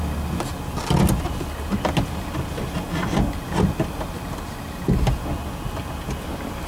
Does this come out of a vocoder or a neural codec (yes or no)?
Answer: no